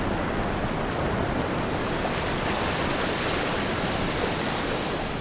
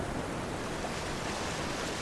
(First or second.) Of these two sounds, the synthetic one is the first